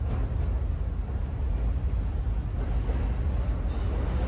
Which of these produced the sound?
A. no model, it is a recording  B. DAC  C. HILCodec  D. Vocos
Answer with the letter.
A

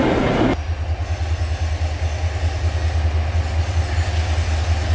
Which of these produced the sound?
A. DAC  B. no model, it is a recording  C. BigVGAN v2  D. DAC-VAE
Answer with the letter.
B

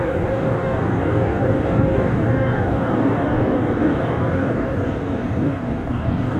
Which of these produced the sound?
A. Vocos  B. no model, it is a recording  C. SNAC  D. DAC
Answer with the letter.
D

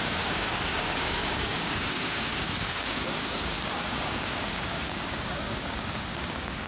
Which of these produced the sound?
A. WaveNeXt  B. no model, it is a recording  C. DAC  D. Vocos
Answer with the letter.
C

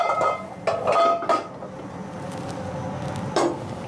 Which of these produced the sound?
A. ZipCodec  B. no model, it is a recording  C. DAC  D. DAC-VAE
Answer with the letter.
B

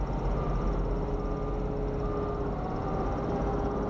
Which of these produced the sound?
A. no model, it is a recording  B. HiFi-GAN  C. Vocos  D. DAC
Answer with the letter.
A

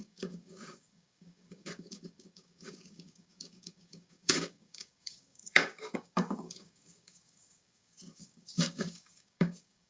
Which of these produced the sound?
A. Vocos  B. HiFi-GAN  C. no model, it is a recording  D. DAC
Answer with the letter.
D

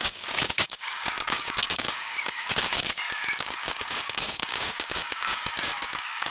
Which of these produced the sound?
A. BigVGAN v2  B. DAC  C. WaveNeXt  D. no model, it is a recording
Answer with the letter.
B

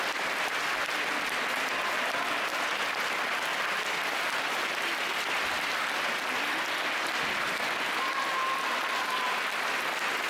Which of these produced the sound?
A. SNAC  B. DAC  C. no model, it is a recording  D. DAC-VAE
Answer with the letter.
C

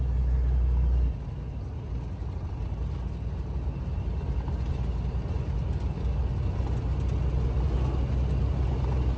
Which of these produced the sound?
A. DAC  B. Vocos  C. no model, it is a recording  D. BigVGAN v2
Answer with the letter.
C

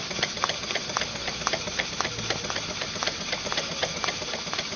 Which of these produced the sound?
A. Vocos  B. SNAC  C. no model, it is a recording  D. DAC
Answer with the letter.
C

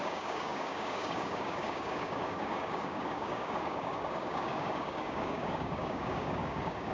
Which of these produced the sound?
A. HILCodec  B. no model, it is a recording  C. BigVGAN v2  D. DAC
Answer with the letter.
D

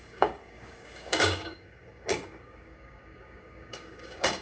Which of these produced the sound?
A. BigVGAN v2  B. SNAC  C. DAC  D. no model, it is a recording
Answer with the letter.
C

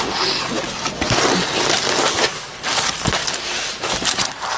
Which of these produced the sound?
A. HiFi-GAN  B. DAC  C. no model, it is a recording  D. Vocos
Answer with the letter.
C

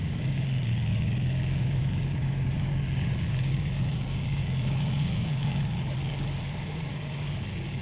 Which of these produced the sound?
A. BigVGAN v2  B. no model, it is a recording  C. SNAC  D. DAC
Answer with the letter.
D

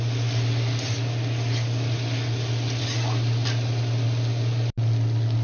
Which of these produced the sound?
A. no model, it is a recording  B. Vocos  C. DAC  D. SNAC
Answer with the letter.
A